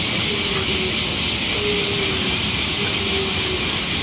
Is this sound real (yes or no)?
yes